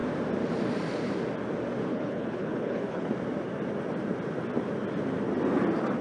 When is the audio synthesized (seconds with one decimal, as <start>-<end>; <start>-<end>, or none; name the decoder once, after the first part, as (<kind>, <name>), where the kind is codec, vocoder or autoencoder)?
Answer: 1.9-3.1 (codec, HILCodec)